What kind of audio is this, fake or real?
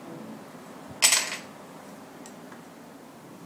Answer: real